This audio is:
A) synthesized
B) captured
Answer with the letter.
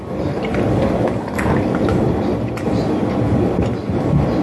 A